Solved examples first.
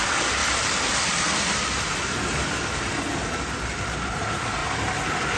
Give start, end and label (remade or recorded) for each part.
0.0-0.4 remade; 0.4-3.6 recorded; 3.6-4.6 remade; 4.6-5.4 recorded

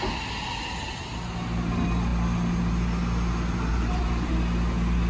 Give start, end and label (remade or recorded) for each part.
0.0-3.7 recorded; 3.7-4.3 remade; 4.3-5.1 recorded

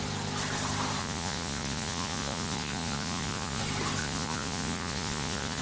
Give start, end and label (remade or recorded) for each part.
0.0-1.0 recorded; 1.0-3.6 remade; 3.6-4.0 recorded; 4.0-5.6 remade

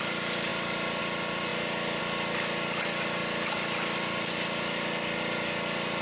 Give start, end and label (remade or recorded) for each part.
0.0-6.0 recorded

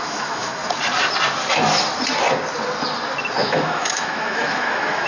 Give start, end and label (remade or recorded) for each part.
0.0-0.6 remade; 0.6-3.4 recorded; 3.4-5.1 remade

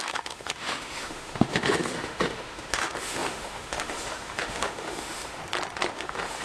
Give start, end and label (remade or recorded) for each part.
0.0-5.4 remade; 5.4-5.9 recorded; 5.9-6.4 remade

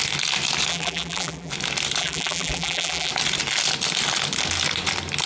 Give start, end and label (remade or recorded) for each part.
0.0-0.7 recorded; 0.7-1.5 remade; 1.5-2.0 recorded; 2.0-3.1 remade; 3.1-5.3 recorded